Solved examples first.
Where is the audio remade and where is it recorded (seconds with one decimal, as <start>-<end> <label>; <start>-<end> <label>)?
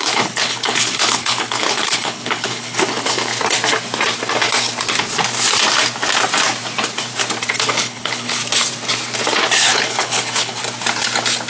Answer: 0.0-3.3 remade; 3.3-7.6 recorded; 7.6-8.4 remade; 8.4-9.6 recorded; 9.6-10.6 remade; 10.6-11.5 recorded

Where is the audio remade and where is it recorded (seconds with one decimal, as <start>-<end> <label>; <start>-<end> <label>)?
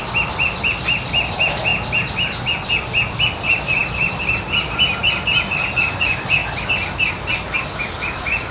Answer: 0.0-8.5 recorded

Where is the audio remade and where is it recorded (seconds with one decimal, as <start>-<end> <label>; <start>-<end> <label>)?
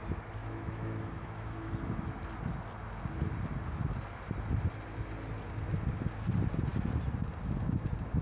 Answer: 0.0-0.4 recorded; 0.4-1.7 remade; 1.7-8.2 recorded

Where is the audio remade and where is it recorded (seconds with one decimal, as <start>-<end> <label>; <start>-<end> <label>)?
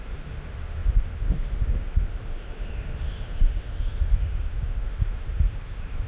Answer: 0.0-6.1 remade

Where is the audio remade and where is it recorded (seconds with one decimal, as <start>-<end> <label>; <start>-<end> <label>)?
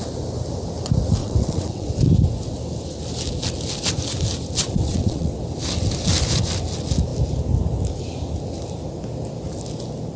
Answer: 0.0-1.2 recorded; 1.2-1.9 remade; 1.9-4.6 recorded; 4.6-5.3 remade; 5.3-10.2 recorded